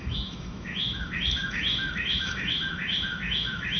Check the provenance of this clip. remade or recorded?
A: remade